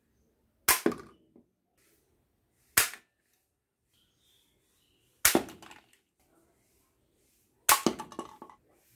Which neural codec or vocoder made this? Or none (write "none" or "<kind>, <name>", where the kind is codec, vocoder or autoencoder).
none